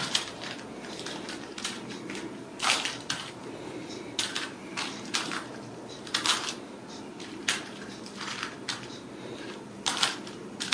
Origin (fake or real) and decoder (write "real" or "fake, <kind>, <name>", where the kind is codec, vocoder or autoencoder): fake, vocoder, BigVGAN v2